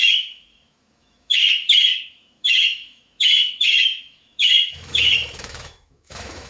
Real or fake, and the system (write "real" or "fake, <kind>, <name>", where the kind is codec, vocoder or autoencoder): fake, autoencoder, DAC-VAE